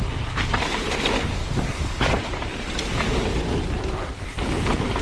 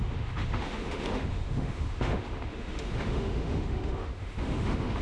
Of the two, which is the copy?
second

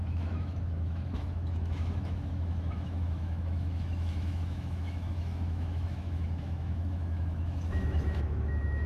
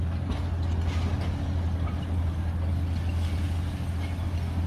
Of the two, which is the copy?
first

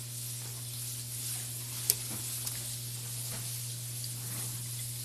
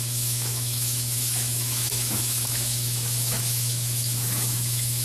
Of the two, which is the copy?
second